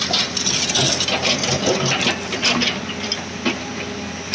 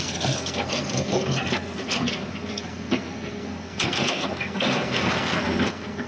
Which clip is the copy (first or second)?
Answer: second